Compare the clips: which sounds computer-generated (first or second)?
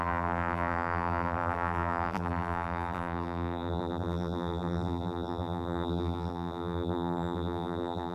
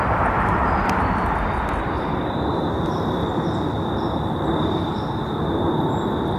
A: first